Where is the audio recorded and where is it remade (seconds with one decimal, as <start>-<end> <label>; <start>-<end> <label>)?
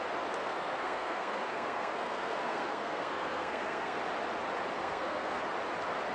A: 0.0-0.4 recorded; 0.4-4.0 remade; 4.0-4.8 recorded; 4.8-5.4 remade; 5.4-6.1 recorded